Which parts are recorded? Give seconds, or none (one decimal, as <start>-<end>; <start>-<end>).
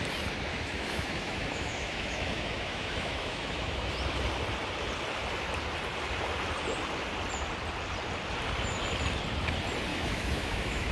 0.0-0.5; 3.9-9.9